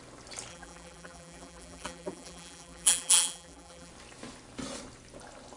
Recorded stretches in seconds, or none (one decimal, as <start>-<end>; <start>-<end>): 0.0-0.5; 3.9-5.6